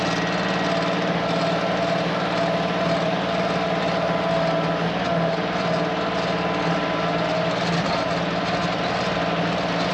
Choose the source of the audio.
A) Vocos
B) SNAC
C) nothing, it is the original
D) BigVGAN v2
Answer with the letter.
C